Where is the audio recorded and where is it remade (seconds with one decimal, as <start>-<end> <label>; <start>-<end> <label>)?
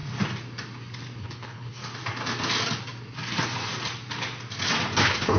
0.0-1.2 recorded; 1.2-1.8 remade; 1.8-5.0 recorded; 5.0-5.4 remade